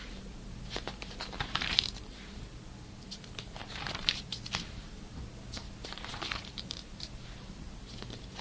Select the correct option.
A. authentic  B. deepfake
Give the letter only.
B